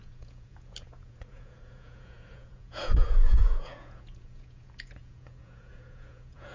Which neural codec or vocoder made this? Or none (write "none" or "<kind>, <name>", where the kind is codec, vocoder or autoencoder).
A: vocoder, Vocos